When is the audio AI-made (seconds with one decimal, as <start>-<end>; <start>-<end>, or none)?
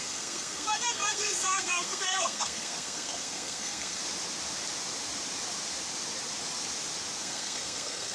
0.0-4.0; 7.2-8.1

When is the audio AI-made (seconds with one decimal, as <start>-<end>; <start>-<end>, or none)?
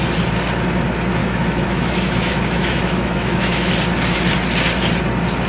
1.2-3.7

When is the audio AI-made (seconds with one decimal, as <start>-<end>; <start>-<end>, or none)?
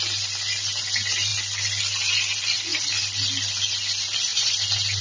none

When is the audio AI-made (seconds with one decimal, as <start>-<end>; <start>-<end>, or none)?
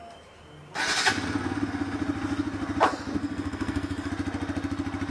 3.2-4.1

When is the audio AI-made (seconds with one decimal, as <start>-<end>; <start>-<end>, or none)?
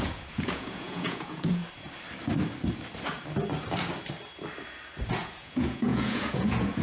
0.0-1.6; 5.1-6.8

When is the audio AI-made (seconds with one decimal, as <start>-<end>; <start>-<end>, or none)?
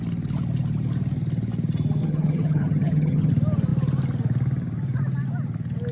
2.0-3.3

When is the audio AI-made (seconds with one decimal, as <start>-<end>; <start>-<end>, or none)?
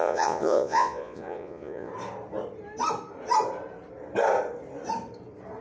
0.0-1.9